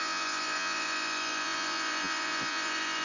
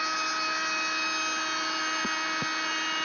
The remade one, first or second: first